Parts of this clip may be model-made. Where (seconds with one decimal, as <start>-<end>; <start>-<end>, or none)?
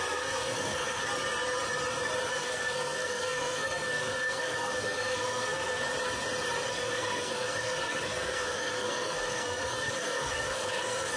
0.0-1.0; 2.3-5.8; 6.7-11.2